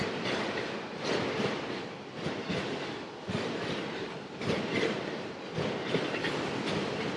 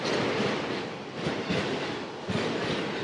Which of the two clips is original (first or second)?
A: second